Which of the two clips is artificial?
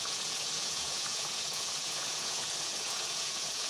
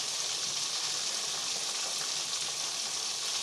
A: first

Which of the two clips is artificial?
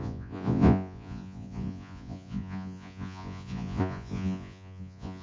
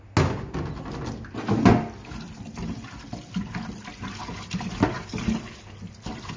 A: first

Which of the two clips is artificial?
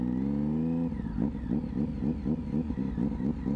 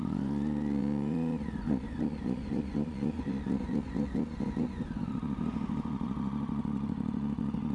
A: second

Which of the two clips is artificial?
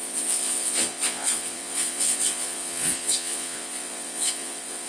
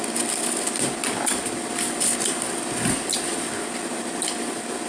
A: first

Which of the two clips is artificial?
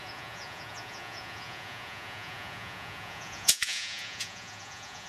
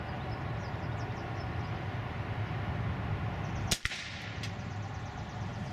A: first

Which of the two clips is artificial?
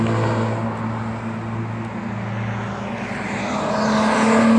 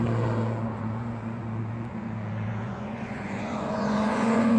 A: second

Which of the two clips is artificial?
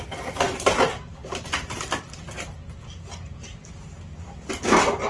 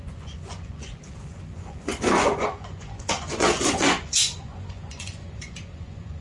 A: second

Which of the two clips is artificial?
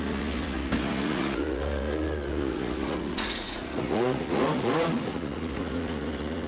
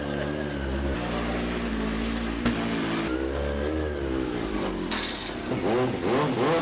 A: first